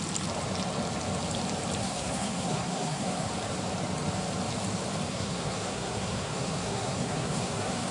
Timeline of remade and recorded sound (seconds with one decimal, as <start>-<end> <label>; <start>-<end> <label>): 0.0-1.8 recorded; 1.8-3.3 remade; 3.3-5.1 recorded; 5.1-7.9 remade